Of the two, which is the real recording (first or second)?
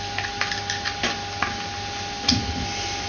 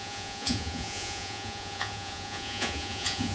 first